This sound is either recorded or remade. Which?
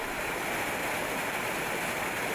recorded